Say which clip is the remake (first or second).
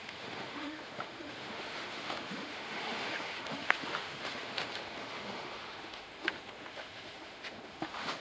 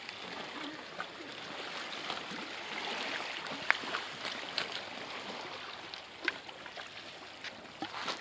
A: first